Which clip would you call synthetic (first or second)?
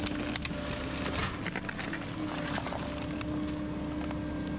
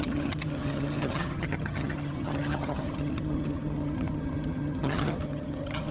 second